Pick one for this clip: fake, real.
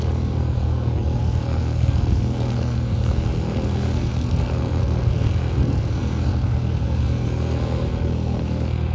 fake